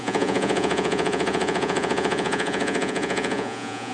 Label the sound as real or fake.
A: fake